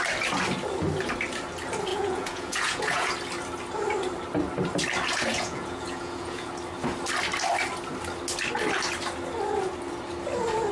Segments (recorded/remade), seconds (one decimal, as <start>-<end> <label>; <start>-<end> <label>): 0.0-1.9 recorded; 1.9-3.1 remade; 3.1-5.3 recorded; 5.3-6.5 remade; 6.5-10.7 recorded